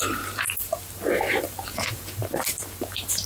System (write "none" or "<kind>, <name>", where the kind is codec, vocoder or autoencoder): vocoder, BigVGAN v2